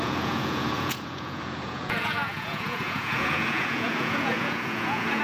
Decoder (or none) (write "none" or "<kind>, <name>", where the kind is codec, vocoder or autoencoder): vocoder, Vocos